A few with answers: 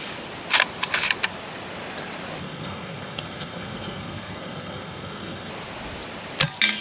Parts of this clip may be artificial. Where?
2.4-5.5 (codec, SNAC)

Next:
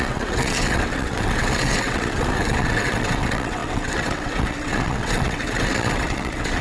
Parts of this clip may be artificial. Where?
0.0-6.6 (vocoder, WaveNeXt)

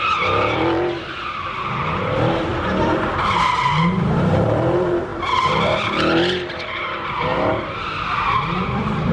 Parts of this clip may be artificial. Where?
0.0-2.5 (vocoder, BigVGAN v2); 4.2-7.3; 8.6-9.1

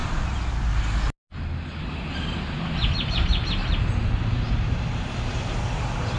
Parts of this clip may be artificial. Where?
3.6-6.2 (vocoder, BigVGAN v2)

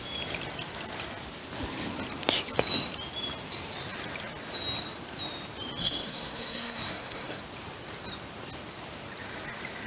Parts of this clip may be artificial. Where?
5.8-7.4 (codec, SNAC)

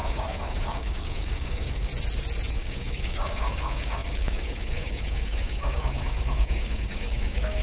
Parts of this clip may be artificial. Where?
0.0-1.9 (codec, DAC); 2.5-7.6

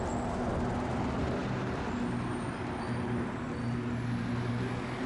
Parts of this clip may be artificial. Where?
none